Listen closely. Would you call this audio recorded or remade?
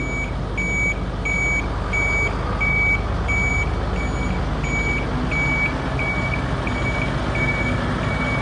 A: recorded